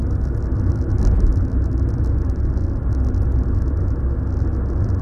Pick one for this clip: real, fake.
real